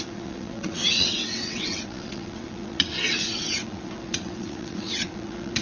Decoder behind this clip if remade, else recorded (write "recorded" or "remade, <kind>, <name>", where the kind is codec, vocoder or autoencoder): remade, vocoder, WaveNeXt